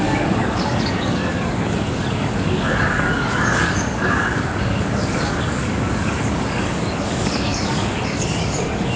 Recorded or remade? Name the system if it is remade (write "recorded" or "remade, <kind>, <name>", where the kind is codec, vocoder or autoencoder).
remade, codec, DAC